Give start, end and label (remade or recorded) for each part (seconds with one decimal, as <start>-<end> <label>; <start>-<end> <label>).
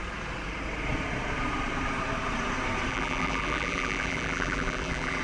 0.0-2.9 recorded; 2.9-5.2 remade